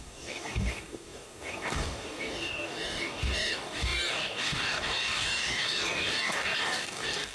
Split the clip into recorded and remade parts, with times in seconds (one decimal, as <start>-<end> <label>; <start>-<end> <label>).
0.0-7.3 remade